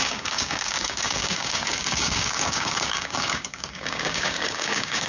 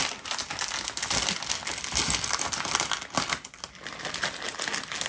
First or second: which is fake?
first